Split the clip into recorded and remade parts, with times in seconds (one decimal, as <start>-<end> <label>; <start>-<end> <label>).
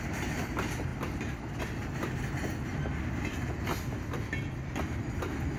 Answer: 0.0-5.6 recorded